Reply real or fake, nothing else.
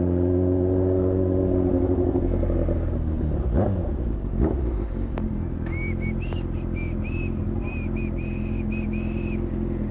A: real